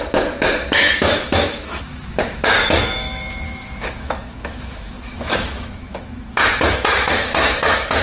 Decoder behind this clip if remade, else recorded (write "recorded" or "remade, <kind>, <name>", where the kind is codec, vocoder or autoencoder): remade, autoencoder, DAC-VAE